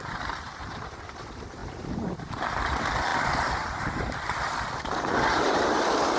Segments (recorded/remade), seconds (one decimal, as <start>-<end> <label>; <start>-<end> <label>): 0.0-1.6 recorded; 1.6-2.4 remade; 2.4-6.2 recorded

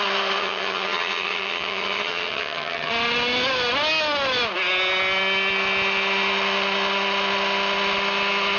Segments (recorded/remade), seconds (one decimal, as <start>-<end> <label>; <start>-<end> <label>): 0.0-0.4 recorded; 0.4-2.9 remade; 2.9-8.6 recorded